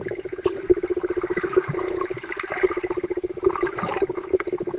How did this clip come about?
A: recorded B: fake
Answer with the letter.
A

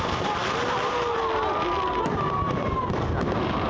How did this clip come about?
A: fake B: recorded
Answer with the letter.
B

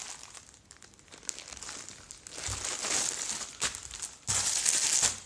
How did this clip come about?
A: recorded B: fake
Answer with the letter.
A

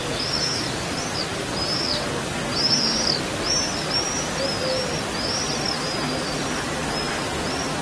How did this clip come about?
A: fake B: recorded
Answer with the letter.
B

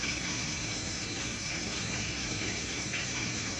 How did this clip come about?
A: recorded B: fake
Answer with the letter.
B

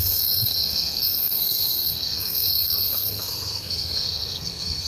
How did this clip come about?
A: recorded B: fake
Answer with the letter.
B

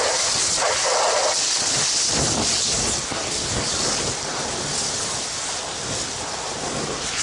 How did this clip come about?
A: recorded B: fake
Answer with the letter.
A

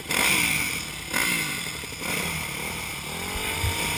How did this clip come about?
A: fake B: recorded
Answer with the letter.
B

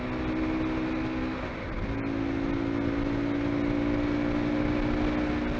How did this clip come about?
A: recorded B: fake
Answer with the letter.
A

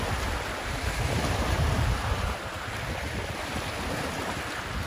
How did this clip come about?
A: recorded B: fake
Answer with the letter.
A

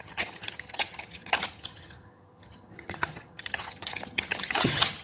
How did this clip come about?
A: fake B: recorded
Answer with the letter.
A